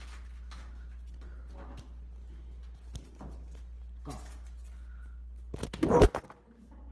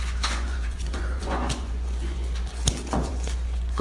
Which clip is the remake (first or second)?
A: second